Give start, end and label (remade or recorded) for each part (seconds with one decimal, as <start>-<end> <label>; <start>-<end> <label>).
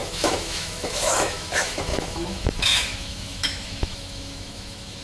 0.0-5.0 remade